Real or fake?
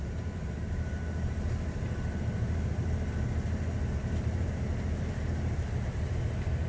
real